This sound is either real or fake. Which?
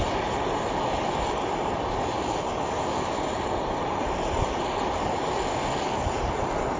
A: real